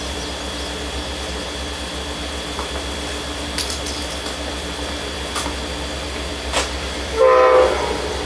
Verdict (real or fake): real